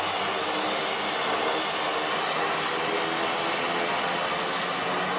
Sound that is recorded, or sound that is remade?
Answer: recorded